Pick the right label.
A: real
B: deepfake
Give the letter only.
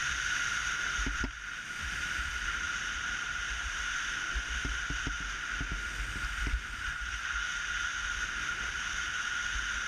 A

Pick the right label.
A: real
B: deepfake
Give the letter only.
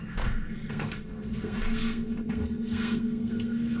B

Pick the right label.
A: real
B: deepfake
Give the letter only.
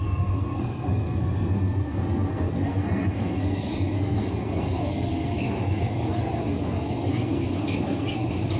B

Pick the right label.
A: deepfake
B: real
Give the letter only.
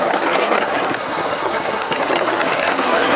A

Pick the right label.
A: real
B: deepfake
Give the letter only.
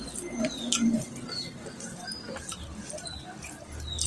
A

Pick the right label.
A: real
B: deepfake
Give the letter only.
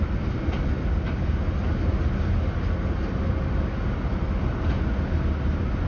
A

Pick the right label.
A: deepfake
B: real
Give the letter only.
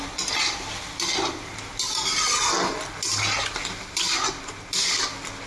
B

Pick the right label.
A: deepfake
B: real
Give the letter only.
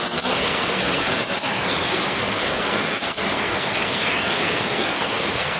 A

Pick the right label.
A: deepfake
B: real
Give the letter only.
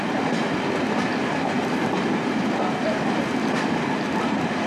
B